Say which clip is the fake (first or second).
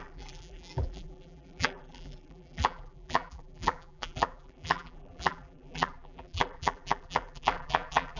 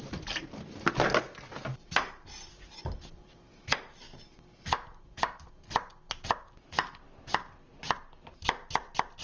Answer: first